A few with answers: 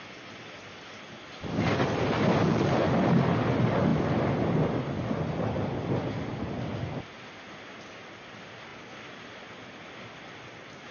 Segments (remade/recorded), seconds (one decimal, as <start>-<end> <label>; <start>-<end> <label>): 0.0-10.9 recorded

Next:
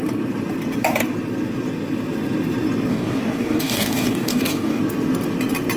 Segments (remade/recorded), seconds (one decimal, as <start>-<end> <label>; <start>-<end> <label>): 0.0-2.9 recorded; 2.9-4.8 remade; 4.8-5.8 recorded

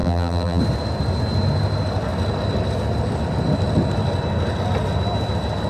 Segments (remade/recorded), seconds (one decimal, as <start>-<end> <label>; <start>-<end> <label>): 0.0-0.6 remade; 0.6-5.7 recorded